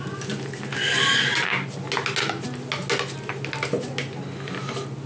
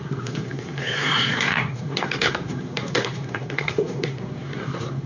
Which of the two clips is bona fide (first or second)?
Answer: first